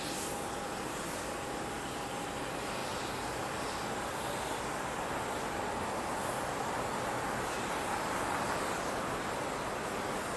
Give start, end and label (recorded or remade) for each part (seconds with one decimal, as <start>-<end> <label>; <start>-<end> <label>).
0.0-10.4 recorded